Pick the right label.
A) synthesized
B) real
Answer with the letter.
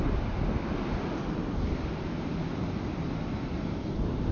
B